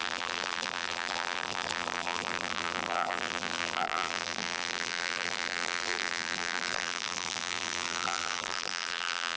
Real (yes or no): no